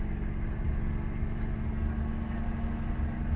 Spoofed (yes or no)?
no